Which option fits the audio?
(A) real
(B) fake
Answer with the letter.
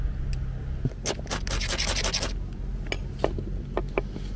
A